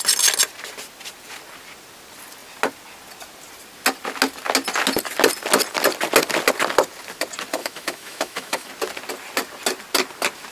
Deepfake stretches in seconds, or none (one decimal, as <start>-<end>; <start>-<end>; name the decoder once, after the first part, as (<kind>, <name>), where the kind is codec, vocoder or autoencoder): 7.6-8.7 (autoencoder, DAC-VAE)